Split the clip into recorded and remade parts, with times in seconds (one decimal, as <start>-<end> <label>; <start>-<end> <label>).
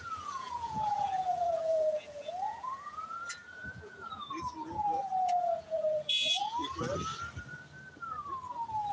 0.0-6.6 remade; 6.6-8.9 recorded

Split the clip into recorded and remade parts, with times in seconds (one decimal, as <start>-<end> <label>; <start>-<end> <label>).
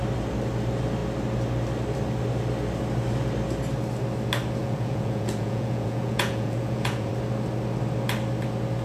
0.0-4.6 recorded; 4.6-7.1 remade; 7.1-8.8 recorded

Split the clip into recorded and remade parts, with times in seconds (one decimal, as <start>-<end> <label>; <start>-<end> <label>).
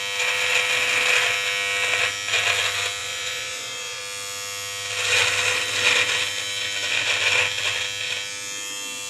0.0-3.0 recorded; 3.0-4.0 remade; 4.0-9.1 recorded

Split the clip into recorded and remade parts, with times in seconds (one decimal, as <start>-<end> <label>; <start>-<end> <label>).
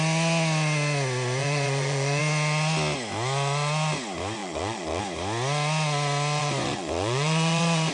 0.0-1.4 recorded; 1.4-2.2 remade; 2.2-4.4 recorded; 4.4-5.0 remade; 5.0-6.4 recorded; 6.4-7.9 remade